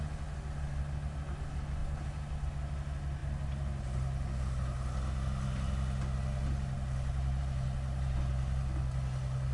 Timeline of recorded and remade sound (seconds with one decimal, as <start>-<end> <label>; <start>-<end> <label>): 0.0-9.5 recorded